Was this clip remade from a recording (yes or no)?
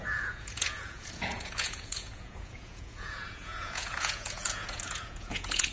yes